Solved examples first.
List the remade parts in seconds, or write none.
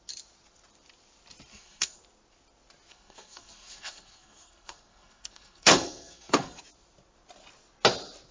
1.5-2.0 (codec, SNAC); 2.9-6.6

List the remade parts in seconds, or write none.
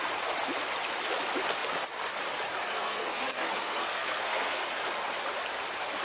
2.7-4.6 (codec, SNAC)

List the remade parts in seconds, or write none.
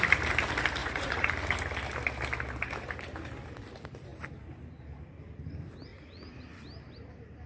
0.8-1.3 (vocoder, Vocos); 5.9-6.4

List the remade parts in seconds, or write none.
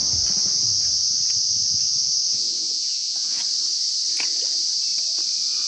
2.3-3.4 (vocoder, Vocos)